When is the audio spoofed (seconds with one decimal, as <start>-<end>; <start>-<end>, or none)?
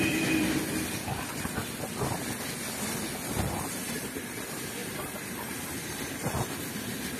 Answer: none